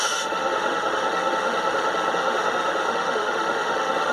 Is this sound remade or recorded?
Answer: remade